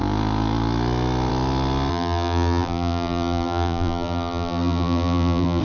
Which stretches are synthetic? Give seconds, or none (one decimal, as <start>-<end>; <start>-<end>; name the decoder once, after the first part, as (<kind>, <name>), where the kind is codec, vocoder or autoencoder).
1.9-5.6 (vocoder, BigVGAN v2)